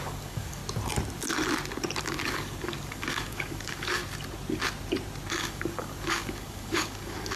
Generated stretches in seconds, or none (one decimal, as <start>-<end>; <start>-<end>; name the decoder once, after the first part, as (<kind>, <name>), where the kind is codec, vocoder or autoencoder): 0.0-0.6 (codec, DAC); 2.0-4.0; 5.3-7.4